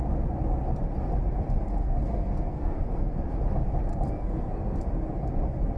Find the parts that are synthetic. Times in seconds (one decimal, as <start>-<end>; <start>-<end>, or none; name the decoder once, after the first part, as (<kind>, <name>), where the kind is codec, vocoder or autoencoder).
1.7-3.2 (codec, SNAC); 3.9-4.8